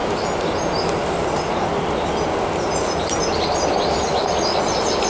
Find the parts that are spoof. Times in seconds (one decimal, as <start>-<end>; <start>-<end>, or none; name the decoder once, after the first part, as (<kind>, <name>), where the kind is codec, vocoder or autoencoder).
none